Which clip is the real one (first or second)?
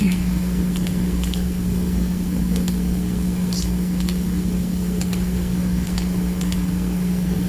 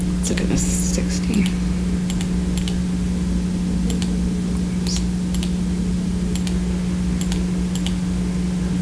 second